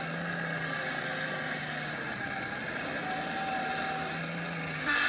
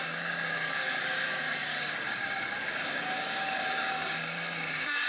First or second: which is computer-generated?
second